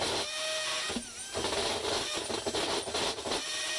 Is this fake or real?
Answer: real